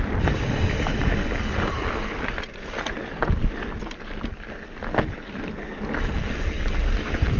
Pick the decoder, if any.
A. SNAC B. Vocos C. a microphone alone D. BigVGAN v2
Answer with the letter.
C